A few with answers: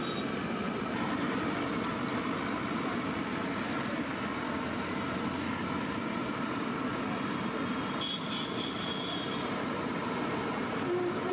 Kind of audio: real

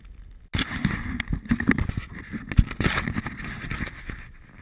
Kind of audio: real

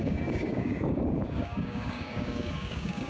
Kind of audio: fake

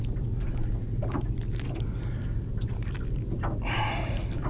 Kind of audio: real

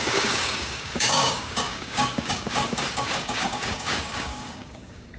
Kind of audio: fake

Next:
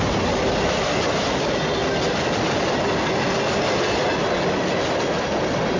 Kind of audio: real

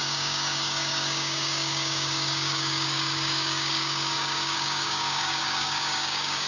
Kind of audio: fake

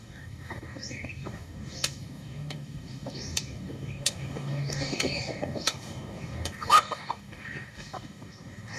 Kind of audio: fake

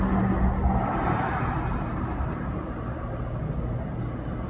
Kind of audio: real